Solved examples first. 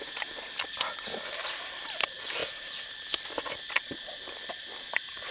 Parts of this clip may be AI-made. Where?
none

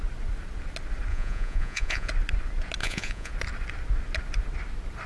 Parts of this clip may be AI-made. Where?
1.1-2.1 (vocoder, Vocos); 2.8-3.3

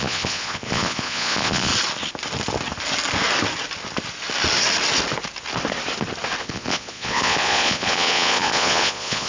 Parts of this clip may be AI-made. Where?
0.0-1.7 (vocoder, Vocos); 6.4-9.3

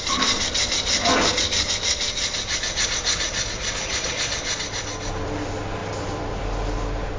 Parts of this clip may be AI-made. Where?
none

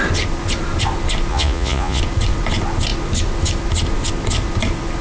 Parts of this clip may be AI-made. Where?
1.3-2.0 (vocoder, Vocos)